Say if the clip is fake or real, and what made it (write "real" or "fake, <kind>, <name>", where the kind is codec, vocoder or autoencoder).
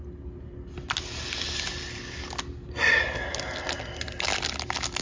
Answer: real